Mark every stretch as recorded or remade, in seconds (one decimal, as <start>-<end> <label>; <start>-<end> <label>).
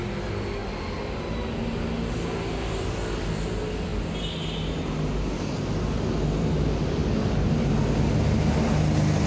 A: 0.0-9.3 recorded